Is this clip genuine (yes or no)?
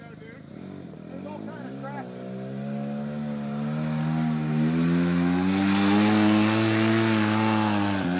yes